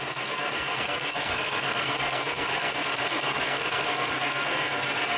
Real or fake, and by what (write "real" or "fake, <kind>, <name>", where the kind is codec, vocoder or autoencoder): fake, codec, SNAC